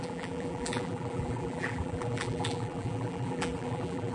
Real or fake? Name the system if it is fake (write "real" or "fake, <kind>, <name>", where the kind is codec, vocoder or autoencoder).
fake, vocoder, BigVGAN v2